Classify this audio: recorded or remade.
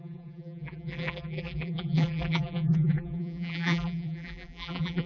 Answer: remade